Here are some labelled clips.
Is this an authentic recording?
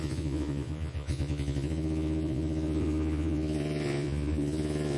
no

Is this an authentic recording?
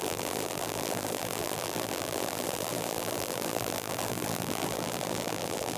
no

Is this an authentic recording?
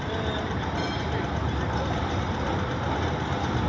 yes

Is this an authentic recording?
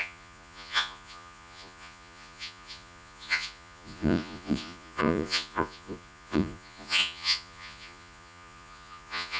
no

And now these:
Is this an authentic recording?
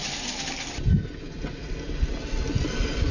yes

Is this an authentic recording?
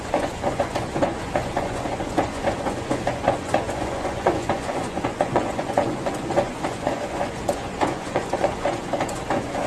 no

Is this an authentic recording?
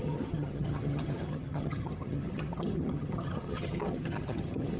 no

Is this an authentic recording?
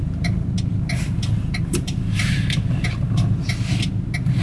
yes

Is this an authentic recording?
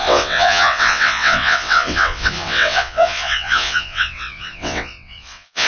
no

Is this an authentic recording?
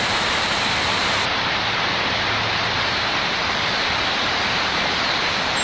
no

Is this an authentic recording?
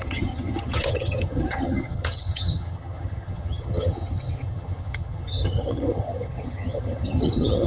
no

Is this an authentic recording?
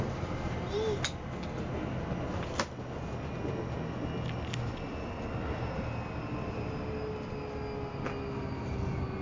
yes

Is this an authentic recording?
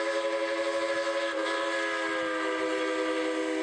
yes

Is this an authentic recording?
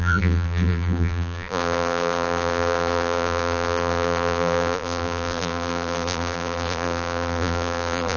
no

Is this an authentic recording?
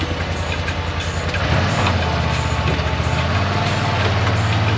yes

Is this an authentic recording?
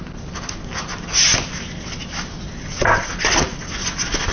yes